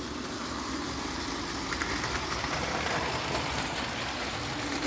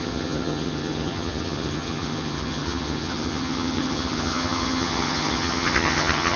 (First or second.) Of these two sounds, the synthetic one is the second